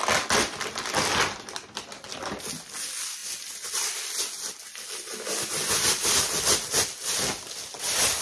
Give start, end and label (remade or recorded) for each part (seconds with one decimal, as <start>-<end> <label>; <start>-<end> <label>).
0.0-8.2 recorded